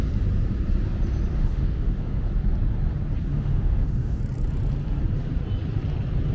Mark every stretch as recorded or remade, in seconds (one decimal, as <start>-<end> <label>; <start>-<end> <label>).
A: 0.0-1.3 recorded; 1.3-2.3 remade; 2.3-3.3 recorded; 3.3-4.2 remade; 4.2-6.3 recorded